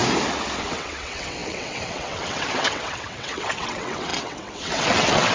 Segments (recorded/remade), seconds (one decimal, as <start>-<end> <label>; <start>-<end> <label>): 0.0-0.6 recorded; 0.6-5.3 remade